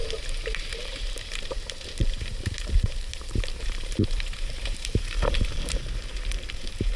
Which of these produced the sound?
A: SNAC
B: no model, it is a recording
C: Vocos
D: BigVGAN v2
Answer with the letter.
D